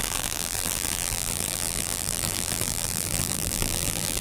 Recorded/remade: remade